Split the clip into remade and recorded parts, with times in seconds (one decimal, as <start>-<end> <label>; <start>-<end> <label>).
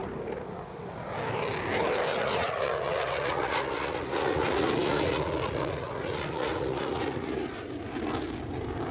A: 0.0-2.1 recorded; 2.1-7.4 remade; 7.4-8.9 recorded